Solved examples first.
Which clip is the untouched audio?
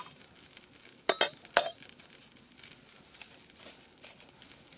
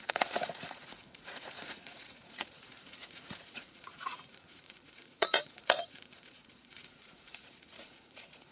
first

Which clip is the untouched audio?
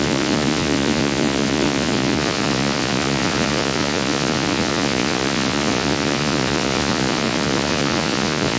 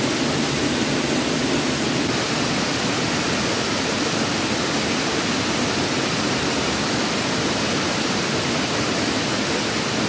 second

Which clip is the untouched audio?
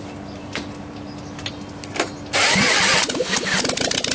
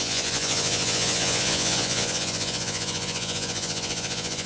first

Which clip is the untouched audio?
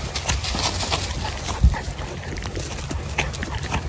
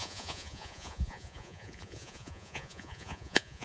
first